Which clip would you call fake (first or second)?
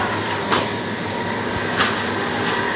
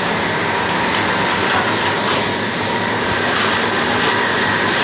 second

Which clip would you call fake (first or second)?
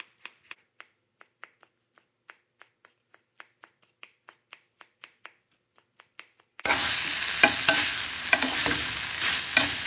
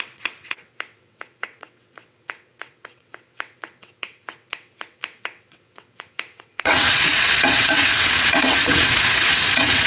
second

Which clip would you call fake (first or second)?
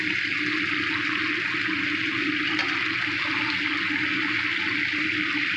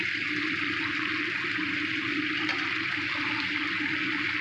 second